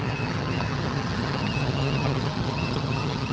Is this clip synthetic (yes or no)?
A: yes